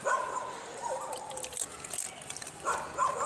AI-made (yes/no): no